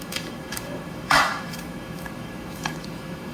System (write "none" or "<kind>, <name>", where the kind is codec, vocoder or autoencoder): autoencoder, DAC-VAE